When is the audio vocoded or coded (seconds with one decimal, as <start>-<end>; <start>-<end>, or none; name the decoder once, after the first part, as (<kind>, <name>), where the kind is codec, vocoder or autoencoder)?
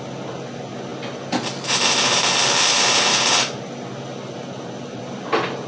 none